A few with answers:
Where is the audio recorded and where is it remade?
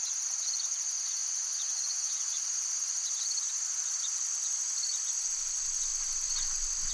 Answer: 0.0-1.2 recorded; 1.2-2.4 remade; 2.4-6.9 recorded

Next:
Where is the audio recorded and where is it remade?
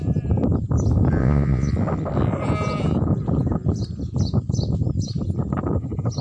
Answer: 0.0-1.2 recorded; 1.2-1.7 remade; 1.7-6.2 recorded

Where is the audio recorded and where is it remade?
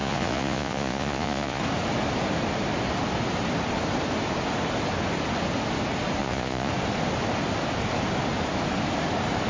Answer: 0.0-1.6 remade; 1.6-6.2 recorded; 6.2-6.7 remade; 6.7-9.5 recorded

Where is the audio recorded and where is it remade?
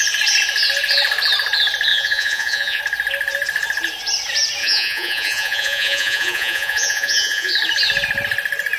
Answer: 0.0-1.9 recorded; 1.9-2.8 remade; 2.8-4.6 recorded; 4.6-7.5 remade; 7.5-8.8 recorded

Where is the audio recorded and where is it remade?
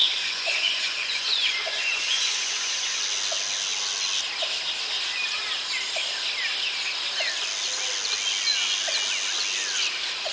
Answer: 0.0-3.0 remade; 3.0-10.3 recorded